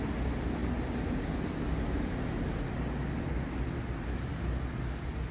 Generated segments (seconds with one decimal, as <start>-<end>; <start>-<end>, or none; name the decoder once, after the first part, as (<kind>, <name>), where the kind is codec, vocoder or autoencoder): none